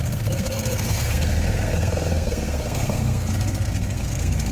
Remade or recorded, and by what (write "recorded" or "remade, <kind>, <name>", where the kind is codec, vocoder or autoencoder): remade, codec, SNAC